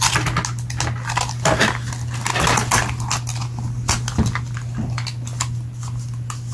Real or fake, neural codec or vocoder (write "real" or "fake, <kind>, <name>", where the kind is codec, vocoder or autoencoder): real